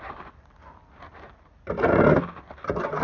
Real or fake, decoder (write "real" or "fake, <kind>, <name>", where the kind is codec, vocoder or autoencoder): real